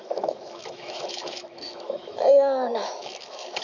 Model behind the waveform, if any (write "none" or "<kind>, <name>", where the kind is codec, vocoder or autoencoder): autoencoder, DAC-VAE